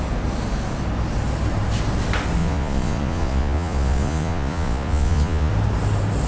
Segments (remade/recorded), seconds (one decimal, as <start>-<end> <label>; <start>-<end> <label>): 0.0-2.4 recorded; 2.4-5.5 remade; 5.5-6.3 recorded